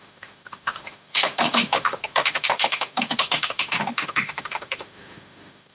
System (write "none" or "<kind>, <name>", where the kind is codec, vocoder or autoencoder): autoencoder, DAC-VAE